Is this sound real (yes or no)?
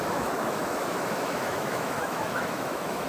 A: no